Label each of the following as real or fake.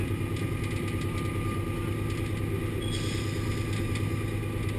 real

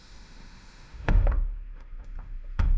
fake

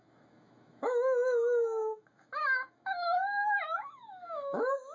fake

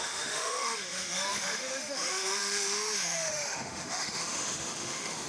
fake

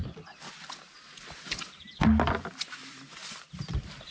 real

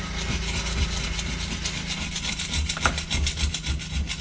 real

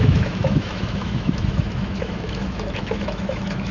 fake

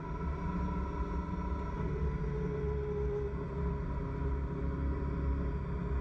real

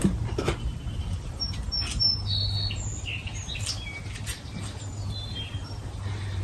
real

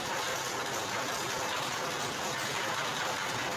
real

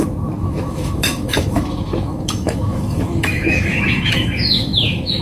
fake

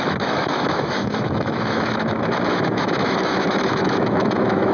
fake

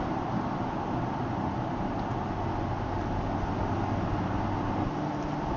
real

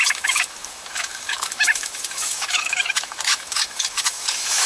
fake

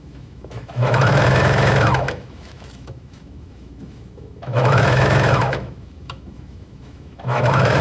fake